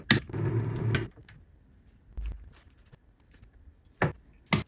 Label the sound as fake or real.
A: real